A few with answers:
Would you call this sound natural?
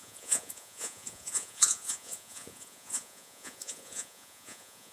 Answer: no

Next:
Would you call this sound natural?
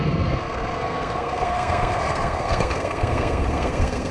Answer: no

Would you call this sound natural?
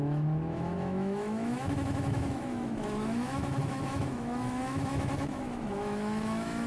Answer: no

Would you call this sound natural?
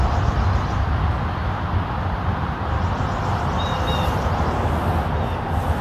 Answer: yes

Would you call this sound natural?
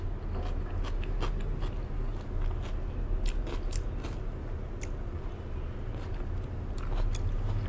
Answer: yes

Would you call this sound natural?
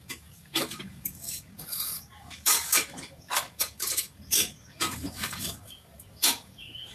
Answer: no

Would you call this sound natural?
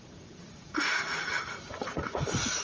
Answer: no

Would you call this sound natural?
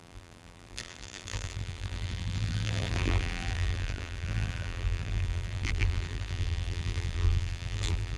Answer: no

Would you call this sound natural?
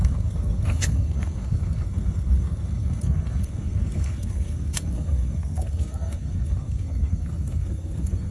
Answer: no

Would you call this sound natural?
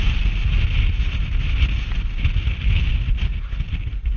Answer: yes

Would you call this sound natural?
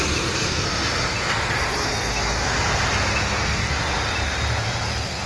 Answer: yes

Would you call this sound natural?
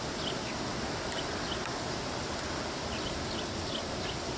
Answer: yes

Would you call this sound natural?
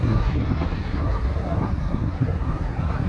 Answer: no